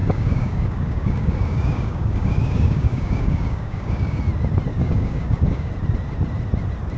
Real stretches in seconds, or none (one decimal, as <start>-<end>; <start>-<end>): 4.2-4.7; 5.7-7.0